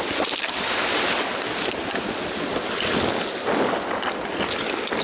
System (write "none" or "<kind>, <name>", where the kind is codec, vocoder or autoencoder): none